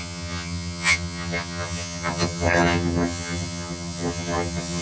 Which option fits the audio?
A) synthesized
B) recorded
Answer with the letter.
A